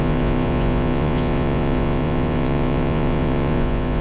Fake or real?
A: fake